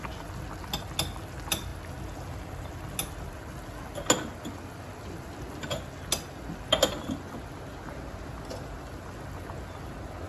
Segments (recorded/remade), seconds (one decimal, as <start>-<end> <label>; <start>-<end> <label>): 0.0-10.3 recorded